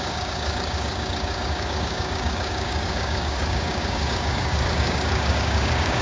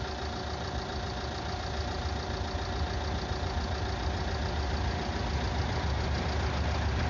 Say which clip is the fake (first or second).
first